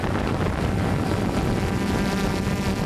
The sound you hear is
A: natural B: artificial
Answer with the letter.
A